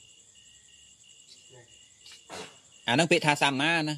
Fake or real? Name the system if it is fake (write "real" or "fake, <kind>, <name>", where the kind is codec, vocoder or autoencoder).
real